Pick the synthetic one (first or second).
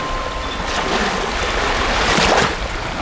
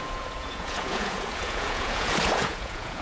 second